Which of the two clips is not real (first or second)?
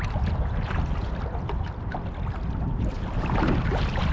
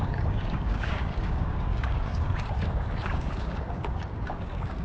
second